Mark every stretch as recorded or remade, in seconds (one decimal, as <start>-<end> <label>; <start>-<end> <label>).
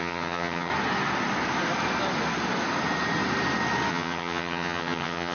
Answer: 0.0-0.7 remade; 0.7-3.9 recorded; 3.9-5.3 remade